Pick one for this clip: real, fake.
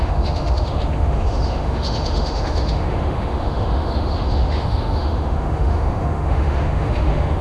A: fake